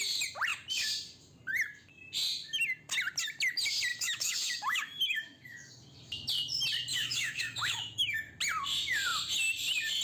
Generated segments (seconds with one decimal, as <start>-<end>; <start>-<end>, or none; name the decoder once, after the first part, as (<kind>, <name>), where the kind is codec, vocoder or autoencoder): 3.9-5.7 (autoencoder, DAC-VAE); 6.9-8.3